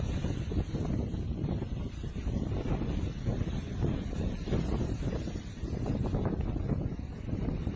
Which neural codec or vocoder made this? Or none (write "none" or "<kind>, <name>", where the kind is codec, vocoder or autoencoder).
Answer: none